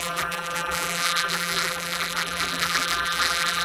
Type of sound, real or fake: fake